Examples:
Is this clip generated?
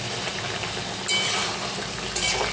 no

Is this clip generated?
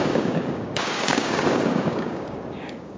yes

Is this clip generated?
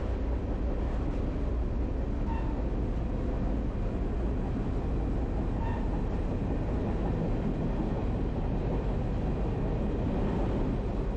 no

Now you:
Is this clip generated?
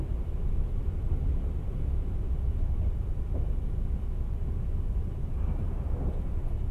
no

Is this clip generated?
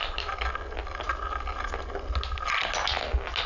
no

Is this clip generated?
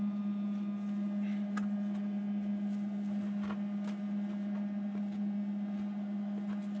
no